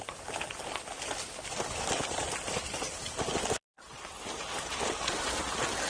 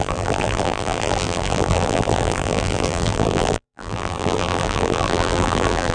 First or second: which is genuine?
first